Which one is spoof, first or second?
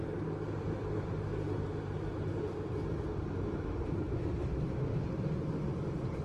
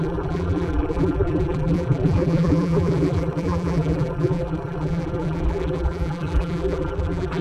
second